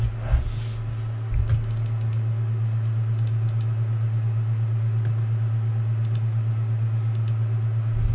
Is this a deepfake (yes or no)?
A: no